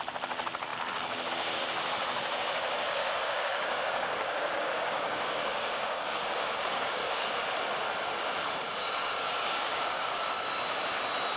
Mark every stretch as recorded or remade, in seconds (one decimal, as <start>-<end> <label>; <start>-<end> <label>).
0.0-2.9 recorded; 2.9-7.3 remade; 7.3-8.8 recorded; 8.8-10.3 remade; 10.3-11.4 recorded